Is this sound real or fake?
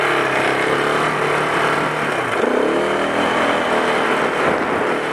real